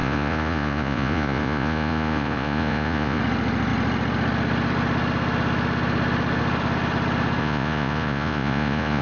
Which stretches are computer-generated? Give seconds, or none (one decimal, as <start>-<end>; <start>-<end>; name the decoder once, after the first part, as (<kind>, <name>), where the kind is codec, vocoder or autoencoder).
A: 0.0-3.2 (vocoder, Vocos); 7.4-9.0